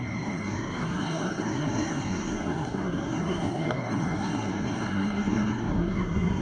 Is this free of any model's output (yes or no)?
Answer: no